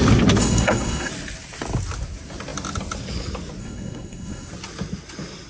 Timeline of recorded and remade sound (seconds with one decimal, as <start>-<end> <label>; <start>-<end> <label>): 0.0-0.4 recorded; 0.4-1.1 remade; 1.1-3.6 recorded; 3.6-4.5 remade; 4.5-5.5 recorded